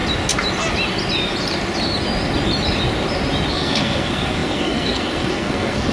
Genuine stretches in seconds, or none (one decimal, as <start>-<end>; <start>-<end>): 0.0-3.5